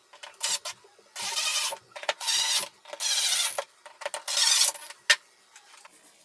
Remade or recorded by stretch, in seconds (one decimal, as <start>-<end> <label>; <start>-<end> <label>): 0.0-1.5 recorded; 1.5-2.6 remade; 2.6-6.2 recorded